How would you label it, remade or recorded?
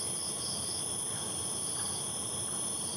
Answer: recorded